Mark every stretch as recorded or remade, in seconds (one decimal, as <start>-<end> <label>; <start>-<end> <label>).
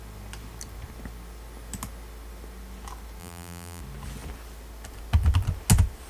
0.0-3.2 recorded; 3.2-3.8 remade; 3.8-6.1 recorded